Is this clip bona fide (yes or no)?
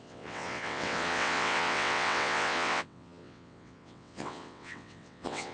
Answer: no